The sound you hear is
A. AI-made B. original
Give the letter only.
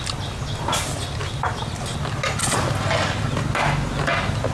B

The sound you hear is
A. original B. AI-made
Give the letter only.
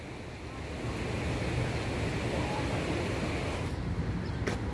A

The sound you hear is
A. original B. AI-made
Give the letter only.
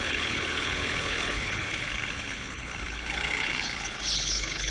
B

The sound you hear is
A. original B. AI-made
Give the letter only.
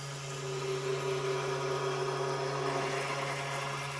A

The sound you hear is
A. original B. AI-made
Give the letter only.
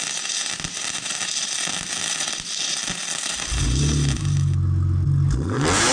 A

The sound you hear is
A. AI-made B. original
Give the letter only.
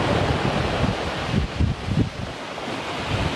B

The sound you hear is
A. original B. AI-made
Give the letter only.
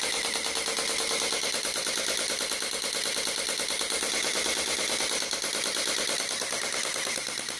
A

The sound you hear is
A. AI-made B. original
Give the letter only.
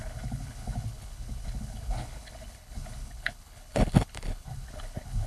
A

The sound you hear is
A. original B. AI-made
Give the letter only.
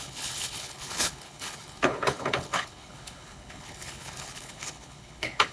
B